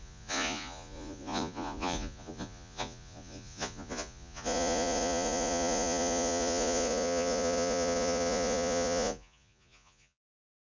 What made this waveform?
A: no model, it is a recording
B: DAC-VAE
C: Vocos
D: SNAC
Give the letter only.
C